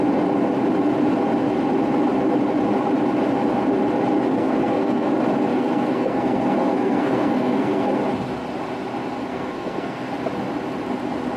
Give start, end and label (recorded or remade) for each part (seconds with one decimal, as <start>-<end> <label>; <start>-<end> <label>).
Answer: 0.0-4.3 recorded; 4.3-5.1 remade; 5.1-5.5 recorded; 5.5-8.0 remade; 8.0-9.3 recorded; 9.3-10.1 remade; 10.1-11.4 recorded

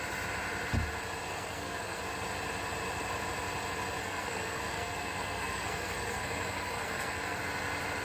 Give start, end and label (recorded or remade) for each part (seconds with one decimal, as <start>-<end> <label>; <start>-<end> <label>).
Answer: 0.0-1.3 recorded; 1.3-2.0 remade; 2.0-4.0 recorded; 4.0-7.4 remade; 7.4-8.0 recorded

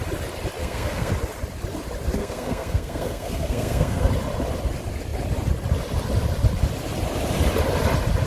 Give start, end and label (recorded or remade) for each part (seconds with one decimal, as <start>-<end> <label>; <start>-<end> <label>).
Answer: 0.0-0.6 recorded; 0.6-1.1 remade; 1.1-2.2 recorded; 2.2-4.1 remade; 4.1-8.3 recorded

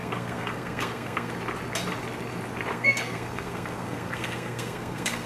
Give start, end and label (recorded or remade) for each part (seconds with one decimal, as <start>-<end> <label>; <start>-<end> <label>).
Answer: 0.0-1.3 remade; 1.3-2.7 recorded; 2.7-5.3 remade

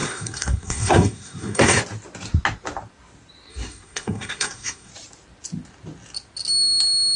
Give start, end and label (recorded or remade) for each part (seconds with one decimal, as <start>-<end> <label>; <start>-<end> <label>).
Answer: 0.0-1.8 remade; 1.8-3.5 recorded; 3.5-4.9 remade; 4.9-7.2 recorded

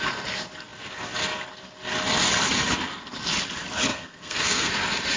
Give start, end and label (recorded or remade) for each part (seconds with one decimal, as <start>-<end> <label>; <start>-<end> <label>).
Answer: 0.0-3.9 recorded; 3.9-4.7 remade; 4.7-5.2 recorded

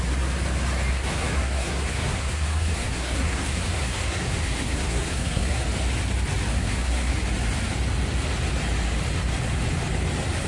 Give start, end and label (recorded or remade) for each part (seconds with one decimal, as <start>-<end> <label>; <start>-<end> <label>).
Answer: 0.0-0.9 recorded; 0.9-5.6 remade; 5.6-6.5 recorded; 6.5-7.1 remade; 7.1-10.5 recorded